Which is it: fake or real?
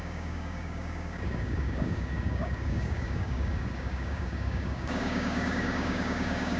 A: fake